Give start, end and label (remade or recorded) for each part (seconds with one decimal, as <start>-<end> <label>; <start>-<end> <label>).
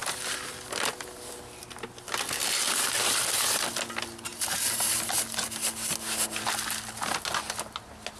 0.0-4.3 recorded; 4.3-5.0 remade; 5.0-8.2 recorded